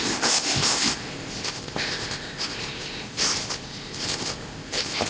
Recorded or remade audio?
remade